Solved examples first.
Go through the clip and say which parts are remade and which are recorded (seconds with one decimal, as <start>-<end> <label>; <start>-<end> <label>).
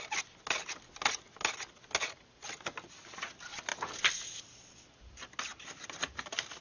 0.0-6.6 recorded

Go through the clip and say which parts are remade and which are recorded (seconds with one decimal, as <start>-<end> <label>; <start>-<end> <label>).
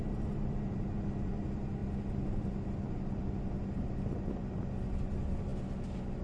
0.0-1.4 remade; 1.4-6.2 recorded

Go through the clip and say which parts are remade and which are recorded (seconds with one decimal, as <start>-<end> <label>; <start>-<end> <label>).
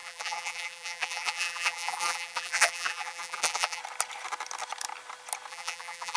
0.0-3.8 remade; 3.8-5.5 recorded; 5.5-6.2 remade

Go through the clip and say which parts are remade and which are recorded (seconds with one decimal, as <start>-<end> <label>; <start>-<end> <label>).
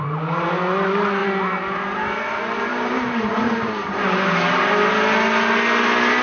0.0-1.2 recorded; 1.2-4.9 remade; 4.9-6.2 recorded